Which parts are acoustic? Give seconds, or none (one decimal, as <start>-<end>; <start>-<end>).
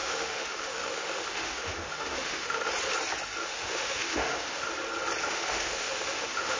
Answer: 2.7-3.4; 4.7-5.2